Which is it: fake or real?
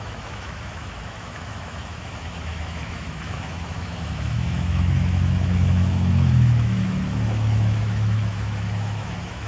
fake